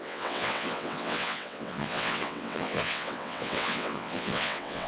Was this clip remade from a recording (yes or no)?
yes